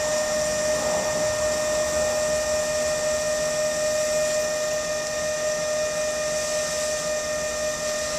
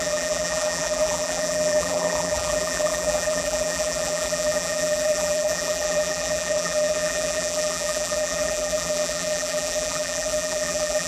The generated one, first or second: second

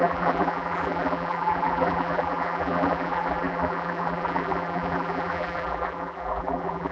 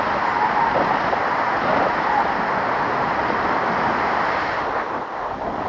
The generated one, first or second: first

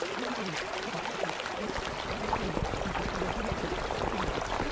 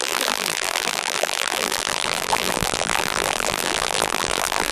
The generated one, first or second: second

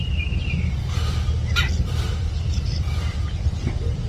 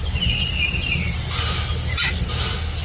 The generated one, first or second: first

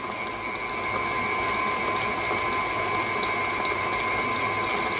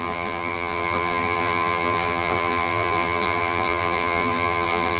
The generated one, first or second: second